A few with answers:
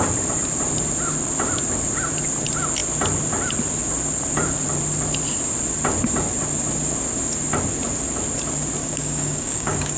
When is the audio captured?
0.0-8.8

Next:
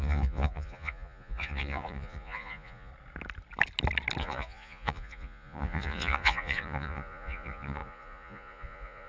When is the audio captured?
2.9-4.2

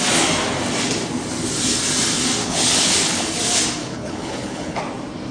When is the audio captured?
0.0-2.4; 3.3-3.8; 4.8-5.3

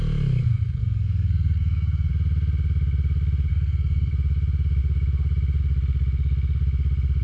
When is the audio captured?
0.0-0.5; 2.1-3.5; 4.1-7.2